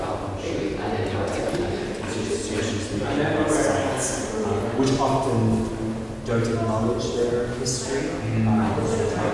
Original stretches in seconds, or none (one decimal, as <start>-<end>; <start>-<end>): 0.0-9.3